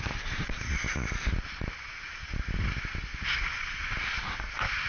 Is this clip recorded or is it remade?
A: recorded